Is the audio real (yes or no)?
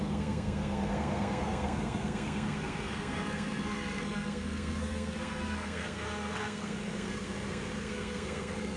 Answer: no